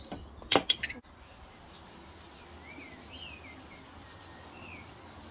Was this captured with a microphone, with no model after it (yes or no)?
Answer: yes